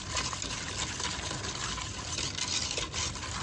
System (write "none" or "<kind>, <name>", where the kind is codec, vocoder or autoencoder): none